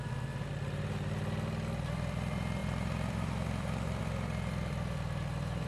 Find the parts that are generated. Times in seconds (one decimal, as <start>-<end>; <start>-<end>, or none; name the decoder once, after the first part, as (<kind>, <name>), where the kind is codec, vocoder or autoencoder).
2.6-4.0 (vocoder, BigVGAN v2)